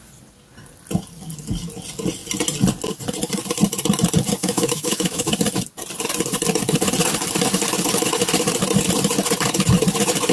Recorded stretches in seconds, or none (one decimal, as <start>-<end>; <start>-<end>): 0.0-4.4; 5.3-10.3